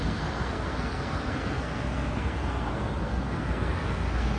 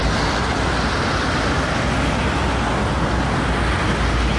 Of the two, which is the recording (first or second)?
second